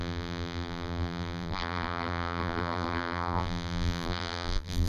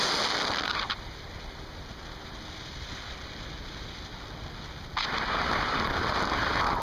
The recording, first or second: second